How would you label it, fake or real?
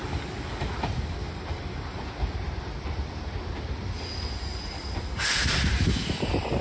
real